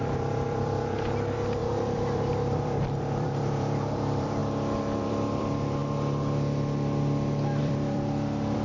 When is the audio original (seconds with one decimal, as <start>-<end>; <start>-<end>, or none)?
4.4-5.0; 5.8-7.6